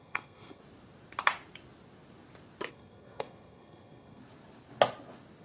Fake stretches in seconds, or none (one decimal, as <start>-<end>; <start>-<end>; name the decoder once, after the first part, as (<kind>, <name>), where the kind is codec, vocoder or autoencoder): 0.0-0.6 (codec, SNAC); 2.7-4.2